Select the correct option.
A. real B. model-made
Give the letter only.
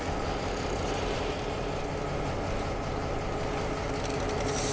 A